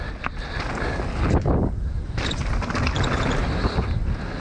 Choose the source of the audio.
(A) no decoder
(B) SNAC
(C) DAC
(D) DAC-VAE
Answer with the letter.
A